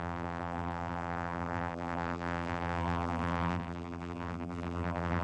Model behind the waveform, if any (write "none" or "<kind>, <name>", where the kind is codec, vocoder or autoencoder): vocoder, BigVGAN v2